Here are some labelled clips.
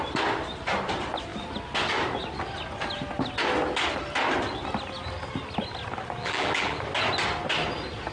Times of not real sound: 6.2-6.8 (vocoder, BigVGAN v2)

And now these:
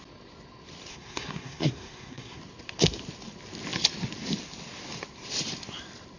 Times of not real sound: 0.9-2.4 (codec, SNAC)

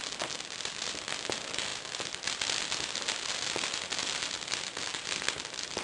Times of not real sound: none

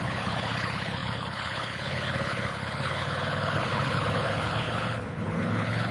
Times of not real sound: 0.0-5.9 (codec, HILCodec)

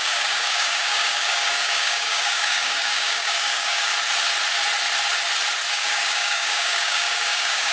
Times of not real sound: 0.0-3.9 (codec, DAC); 5.7-7.7